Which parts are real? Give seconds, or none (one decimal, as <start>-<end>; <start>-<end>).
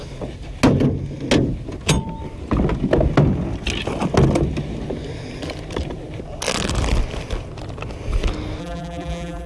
0.0-8.6